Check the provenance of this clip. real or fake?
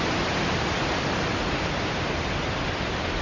real